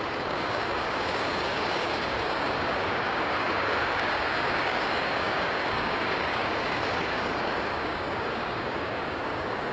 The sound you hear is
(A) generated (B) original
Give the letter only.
A